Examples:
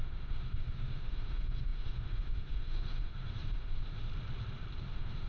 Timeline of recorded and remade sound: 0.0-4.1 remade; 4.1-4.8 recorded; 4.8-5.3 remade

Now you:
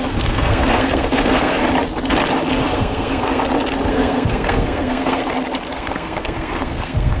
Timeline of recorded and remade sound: 0.0-1.6 remade; 1.6-2.6 recorded; 2.6-3.4 remade; 3.4-3.9 recorded; 3.9-5.2 remade; 5.2-5.7 recorded; 5.7-7.2 remade

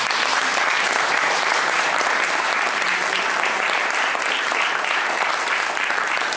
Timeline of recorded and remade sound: 0.0-6.4 remade

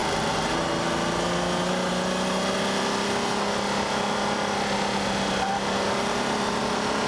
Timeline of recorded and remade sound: 0.0-7.1 recorded

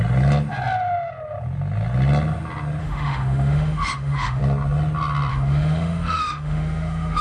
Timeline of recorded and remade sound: 0.0-2.8 recorded; 2.8-4.4 remade; 4.4-5.3 recorded; 5.3-7.2 remade

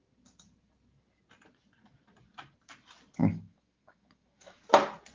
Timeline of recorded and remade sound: 0.0-3.2 recorded; 3.2-4.6 remade; 4.6-5.1 recorded

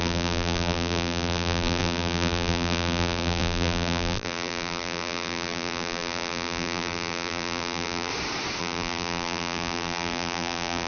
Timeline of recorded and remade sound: 0.0-8.1 remade; 8.1-8.6 recorded; 8.6-10.9 remade

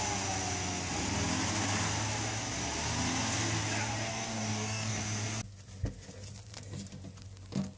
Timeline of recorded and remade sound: 0.0-4.1 recorded; 4.1-5.0 remade; 5.0-7.8 recorded